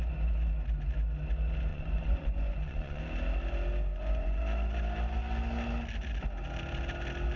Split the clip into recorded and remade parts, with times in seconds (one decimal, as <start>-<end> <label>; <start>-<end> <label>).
0.0-1.7 recorded; 1.7-3.0 remade; 3.0-3.9 recorded; 3.9-4.4 remade; 4.4-7.4 recorded